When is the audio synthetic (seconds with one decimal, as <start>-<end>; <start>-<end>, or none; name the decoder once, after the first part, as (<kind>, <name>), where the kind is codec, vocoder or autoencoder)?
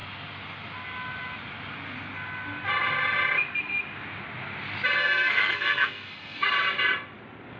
5.0-6.5 (codec, SNAC)